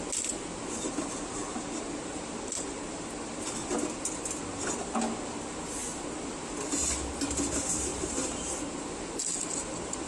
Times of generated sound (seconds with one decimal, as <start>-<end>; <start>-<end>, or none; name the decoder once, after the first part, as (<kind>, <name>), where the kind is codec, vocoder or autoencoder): 7.9-8.5 (vocoder, BigVGAN v2)